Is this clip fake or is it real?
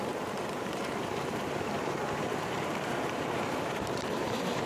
fake